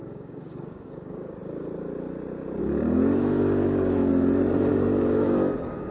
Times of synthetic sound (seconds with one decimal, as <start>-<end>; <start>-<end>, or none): 0.0-1.4; 2.6-4.1; 4.7-5.9